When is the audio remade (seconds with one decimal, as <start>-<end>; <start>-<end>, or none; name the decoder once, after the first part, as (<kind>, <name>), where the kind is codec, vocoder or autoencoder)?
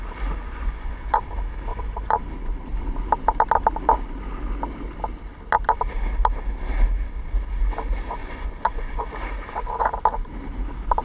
0.4-1.2 (vocoder, Vocos); 1.7-2.2; 8.2-9.1